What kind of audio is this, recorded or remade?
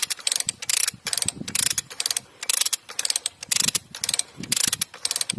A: recorded